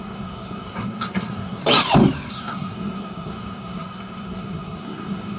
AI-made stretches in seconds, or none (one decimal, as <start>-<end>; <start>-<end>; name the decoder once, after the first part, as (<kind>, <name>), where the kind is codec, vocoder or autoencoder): 0.0-1.6 (codec, SNAC); 2.3-5.4